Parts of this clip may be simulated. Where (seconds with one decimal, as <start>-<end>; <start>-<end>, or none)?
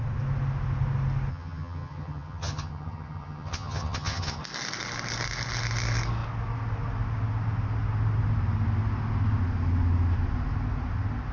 1.3-4.4